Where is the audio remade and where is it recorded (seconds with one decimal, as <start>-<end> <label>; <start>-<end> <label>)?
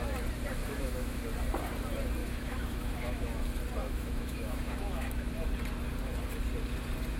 0.0-0.6 recorded; 0.6-1.2 remade; 1.2-2.2 recorded; 2.2-3.4 remade; 3.4-3.8 recorded; 3.8-5.3 remade; 5.3-7.2 recorded